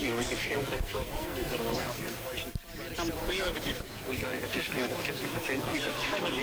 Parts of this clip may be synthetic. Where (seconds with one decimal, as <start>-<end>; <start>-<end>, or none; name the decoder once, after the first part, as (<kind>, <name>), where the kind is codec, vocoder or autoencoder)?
0.0-2.4 (codec, SNAC); 3.2-6.4